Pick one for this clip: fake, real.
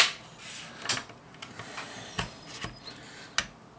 real